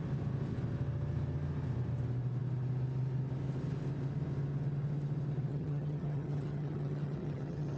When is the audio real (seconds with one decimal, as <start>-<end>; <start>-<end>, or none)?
0.0-5.5